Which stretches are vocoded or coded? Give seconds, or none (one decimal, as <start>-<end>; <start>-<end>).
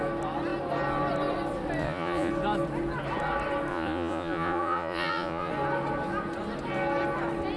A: 1.8-2.3; 3.7-5.5